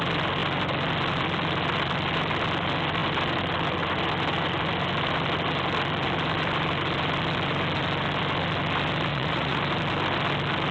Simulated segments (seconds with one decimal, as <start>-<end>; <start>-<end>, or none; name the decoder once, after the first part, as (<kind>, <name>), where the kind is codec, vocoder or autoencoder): 9.1-9.6 (vocoder, Vocos)